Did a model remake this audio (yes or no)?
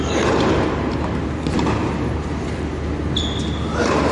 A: no